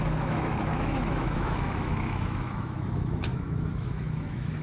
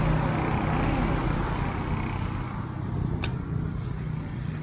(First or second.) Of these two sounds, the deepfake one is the first